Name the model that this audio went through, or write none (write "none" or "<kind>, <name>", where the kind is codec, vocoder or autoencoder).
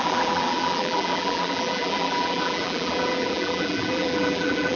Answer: vocoder, BigVGAN v2